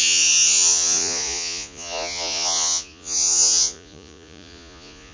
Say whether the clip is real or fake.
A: fake